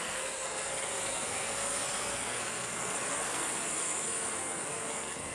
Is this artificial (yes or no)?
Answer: yes